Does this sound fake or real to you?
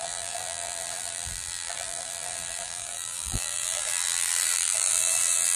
fake